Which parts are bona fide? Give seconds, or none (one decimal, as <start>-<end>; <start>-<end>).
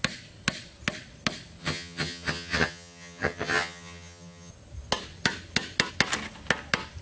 0.0-1.6; 4.5-7.0